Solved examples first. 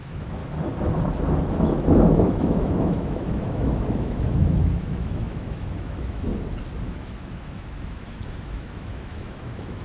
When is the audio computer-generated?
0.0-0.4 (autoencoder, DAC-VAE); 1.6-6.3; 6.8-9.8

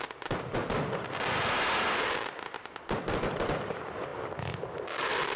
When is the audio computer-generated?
none

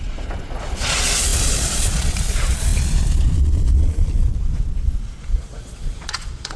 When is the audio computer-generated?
0.0-6.6 (vocoder, Vocos)

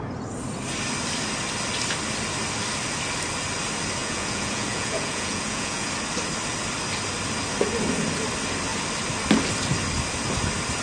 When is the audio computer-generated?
4.0-5.9 (vocoder, Vocos)